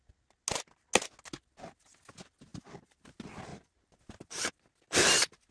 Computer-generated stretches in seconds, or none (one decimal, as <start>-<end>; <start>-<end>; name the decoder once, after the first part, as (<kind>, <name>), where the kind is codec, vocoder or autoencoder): 2.5-3.1 (vocoder, BigVGAN v2); 3.5-4.5